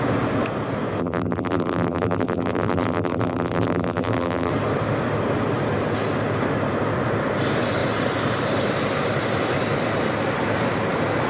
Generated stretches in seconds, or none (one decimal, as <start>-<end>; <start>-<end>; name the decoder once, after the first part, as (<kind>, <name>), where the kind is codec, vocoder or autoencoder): 1.0-4.5 (vocoder, BigVGAN v2)